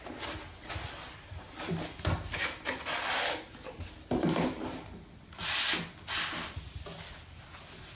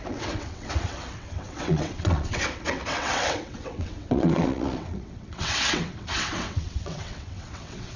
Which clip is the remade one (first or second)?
second